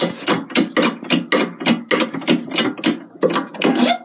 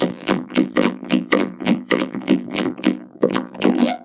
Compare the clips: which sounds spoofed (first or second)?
second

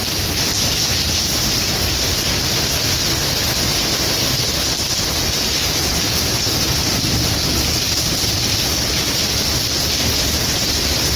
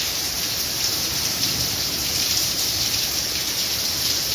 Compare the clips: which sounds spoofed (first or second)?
second